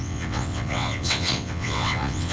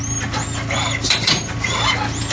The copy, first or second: first